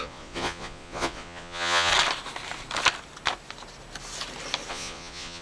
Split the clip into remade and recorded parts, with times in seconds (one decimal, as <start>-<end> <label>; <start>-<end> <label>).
0.0-1.9 remade; 1.9-4.7 recorded; 4.7-5.4 remade